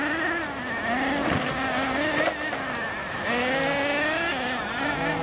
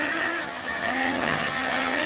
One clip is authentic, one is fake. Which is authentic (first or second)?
first